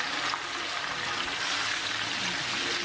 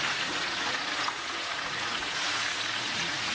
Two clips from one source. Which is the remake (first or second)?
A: second